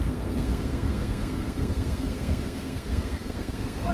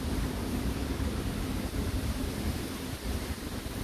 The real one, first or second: second